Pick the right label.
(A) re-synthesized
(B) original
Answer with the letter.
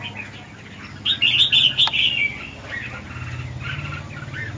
B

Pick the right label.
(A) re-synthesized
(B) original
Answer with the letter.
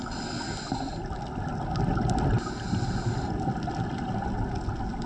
B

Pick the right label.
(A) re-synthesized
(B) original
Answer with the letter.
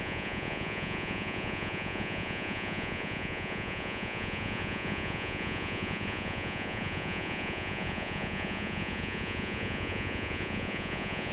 A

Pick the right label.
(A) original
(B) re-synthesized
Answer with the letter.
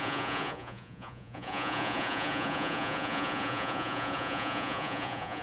B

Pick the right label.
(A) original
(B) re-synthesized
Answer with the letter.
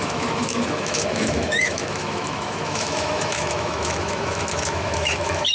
B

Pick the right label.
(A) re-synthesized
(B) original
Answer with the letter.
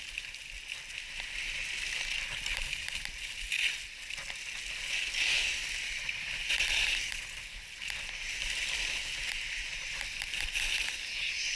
B